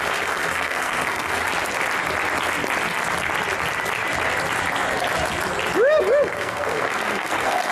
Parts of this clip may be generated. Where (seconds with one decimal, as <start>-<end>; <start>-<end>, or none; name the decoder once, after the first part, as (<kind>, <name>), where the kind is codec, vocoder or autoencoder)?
0.0-1.4 (codec, SNAC); 6.0-7.7